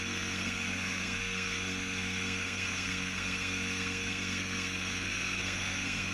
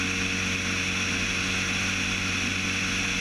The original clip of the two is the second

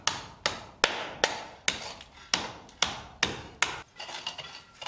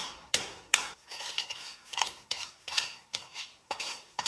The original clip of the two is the first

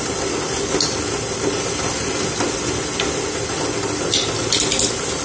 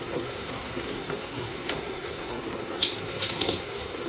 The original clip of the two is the first